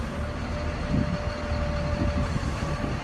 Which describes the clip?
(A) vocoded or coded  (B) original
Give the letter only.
B